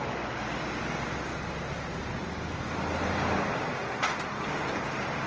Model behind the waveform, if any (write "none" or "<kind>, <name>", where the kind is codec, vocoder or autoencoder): none